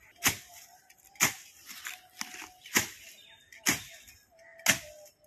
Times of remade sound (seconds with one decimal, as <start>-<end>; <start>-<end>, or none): none